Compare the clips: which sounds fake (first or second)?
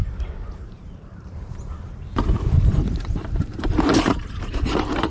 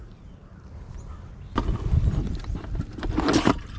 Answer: first